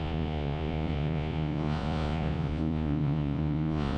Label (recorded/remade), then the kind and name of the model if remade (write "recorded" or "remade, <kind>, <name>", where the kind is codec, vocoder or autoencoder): remade, vocoder, Vocos